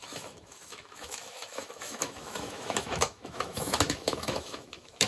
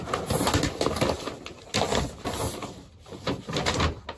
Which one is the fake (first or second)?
first